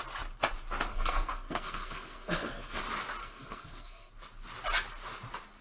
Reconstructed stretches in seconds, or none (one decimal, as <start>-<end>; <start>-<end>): 0.9-2.8; 3.2-4.1